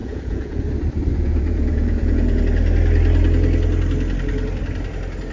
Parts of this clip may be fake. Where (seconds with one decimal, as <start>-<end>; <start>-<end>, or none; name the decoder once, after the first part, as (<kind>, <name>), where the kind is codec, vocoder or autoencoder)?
0.0-0.6 (vocoder, Vocos); 1.1-2.4